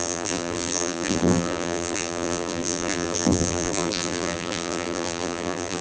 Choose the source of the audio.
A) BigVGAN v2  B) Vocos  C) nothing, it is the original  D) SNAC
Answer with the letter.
A